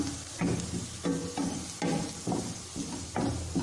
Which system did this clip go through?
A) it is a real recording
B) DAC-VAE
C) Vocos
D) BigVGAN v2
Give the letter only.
A